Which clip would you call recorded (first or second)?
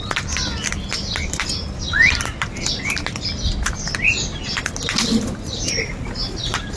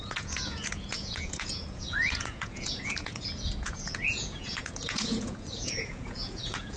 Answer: first